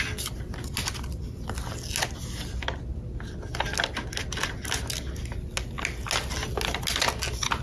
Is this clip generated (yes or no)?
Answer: no